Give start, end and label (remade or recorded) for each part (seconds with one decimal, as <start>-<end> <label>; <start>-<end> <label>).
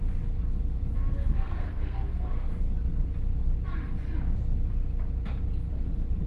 0.0-1.1 recorded; 1.1-2.6 remade; 2.6-6.3 recorded